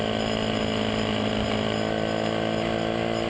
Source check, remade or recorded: recorded